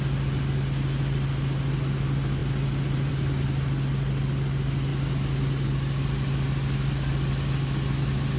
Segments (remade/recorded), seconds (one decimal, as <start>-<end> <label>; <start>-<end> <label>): 0.0-8.4 recorded